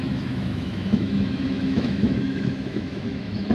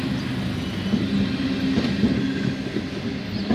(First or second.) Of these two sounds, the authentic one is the second